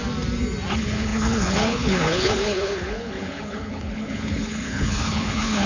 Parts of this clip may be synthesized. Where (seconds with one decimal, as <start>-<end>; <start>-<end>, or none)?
0.7-5.7